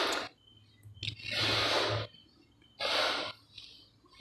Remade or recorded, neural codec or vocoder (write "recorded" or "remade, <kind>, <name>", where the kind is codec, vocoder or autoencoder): recorded